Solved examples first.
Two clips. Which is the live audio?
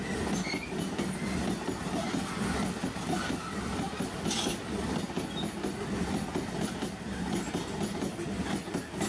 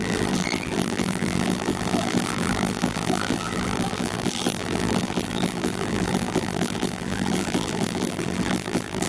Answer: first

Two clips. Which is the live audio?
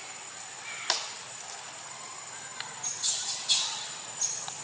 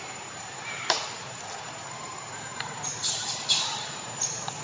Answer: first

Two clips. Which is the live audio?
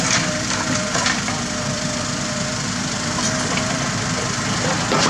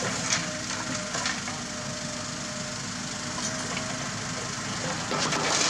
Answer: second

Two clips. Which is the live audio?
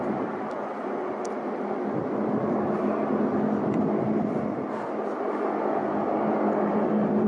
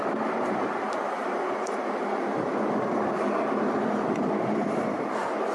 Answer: first